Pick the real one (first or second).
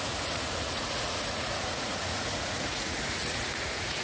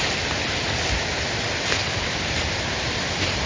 second